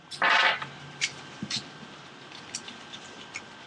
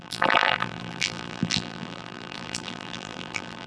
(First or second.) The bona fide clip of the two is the first